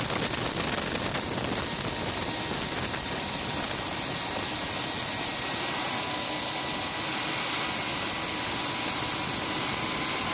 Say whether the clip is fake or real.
real